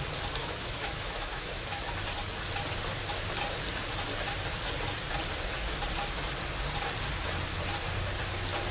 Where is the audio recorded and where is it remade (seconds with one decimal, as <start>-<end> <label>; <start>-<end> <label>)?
0.0-0.4 recorded; 0.4-1.9 remade; 1.9-8.7 recorded